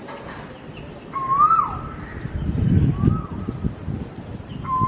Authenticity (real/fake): real